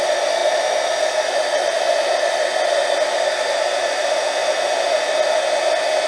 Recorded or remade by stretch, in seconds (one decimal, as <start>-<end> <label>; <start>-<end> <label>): 0.0-6.1 recorded